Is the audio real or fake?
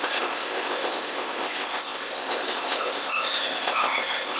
fake